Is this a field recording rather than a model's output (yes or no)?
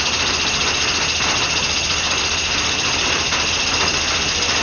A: yes